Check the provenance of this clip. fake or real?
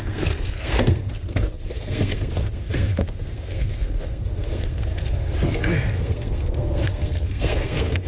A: fake